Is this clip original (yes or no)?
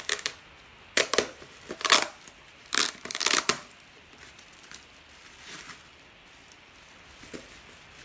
yes